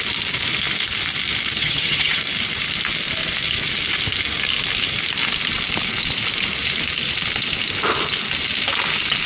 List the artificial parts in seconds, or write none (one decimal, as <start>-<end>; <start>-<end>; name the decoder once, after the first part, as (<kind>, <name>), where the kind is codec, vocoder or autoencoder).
1.6-2.2 (vocoder, HiFi-GAN)